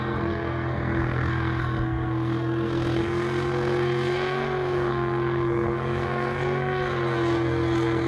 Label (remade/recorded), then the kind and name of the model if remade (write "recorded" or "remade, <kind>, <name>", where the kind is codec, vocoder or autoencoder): remade, codec, SNAC